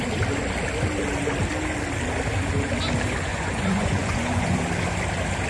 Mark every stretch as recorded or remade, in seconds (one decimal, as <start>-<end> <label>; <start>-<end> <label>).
0.0-3.3 recorded; 3.3-4.6 remade; 4.6-5.5 recorded